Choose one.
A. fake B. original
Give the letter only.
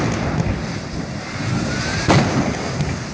B